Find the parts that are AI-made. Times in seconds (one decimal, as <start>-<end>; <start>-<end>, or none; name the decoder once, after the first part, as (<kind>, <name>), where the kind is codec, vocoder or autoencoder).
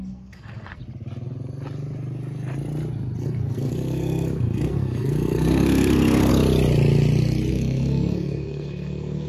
0.0-0.8 (codec, SNAC); 3.2-6.3; 7.5-9.3